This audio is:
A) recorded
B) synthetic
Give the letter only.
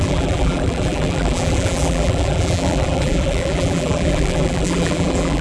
B